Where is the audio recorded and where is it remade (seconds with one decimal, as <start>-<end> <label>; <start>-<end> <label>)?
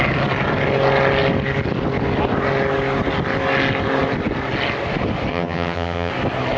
0.0-5.3 recorded; 5.3-6.1 remade; 6.1-6.6 recorded